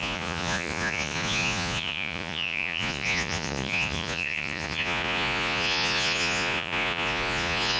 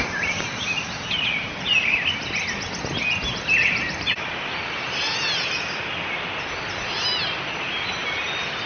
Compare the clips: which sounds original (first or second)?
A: second